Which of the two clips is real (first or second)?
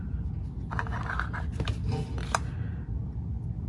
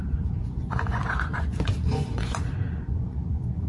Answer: first